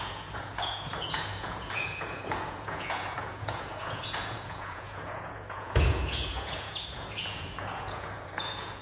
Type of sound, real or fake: fake